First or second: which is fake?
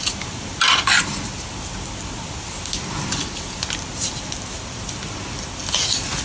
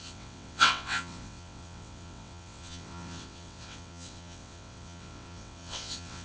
second